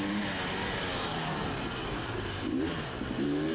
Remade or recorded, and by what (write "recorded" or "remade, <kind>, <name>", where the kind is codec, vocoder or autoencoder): remade, vocoder, BigVGAN v2